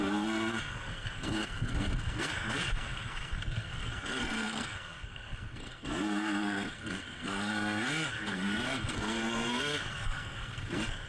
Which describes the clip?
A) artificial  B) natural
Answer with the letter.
A